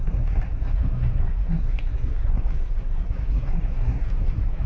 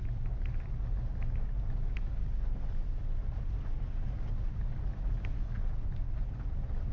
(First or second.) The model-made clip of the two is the first